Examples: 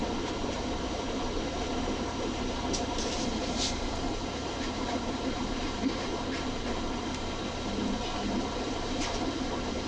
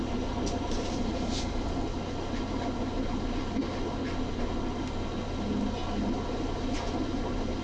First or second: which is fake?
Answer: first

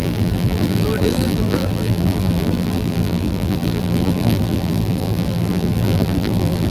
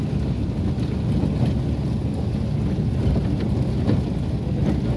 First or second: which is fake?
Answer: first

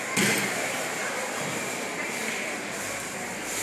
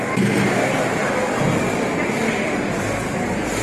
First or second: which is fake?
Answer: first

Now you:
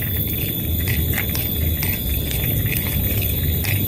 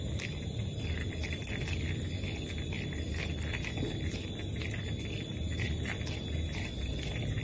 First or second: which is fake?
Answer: first